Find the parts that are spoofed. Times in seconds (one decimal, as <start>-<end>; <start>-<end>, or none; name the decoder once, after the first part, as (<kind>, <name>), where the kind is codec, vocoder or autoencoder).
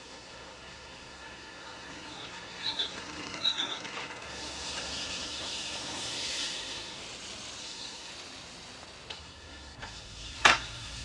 0.0-7.0 (codec, SNAC); 7.6-8.1; 9.1-11.0